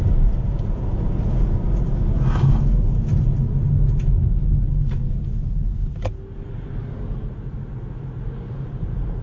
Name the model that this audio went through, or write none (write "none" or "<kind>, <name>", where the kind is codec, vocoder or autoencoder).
none